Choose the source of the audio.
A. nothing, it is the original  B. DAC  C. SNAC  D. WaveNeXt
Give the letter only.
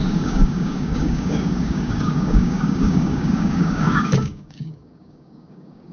B